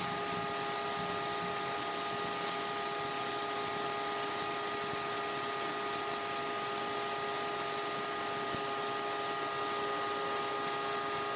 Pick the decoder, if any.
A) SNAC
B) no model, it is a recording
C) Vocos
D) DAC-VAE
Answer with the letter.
B